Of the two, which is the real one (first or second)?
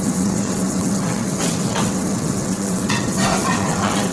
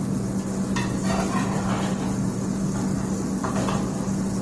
second